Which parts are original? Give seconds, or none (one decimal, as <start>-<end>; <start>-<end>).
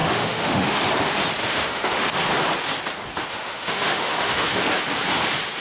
0.8-1.4; 2.1-3.3; 4.7-5.6